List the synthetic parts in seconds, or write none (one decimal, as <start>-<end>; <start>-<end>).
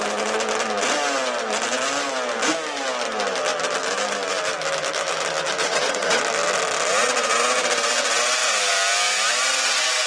5.6-6.2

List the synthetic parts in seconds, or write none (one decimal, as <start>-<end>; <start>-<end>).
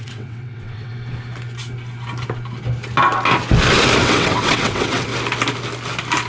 0.0-0.9; 4.0-5.1